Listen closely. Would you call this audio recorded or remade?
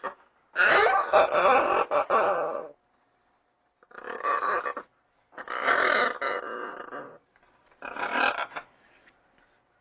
recorded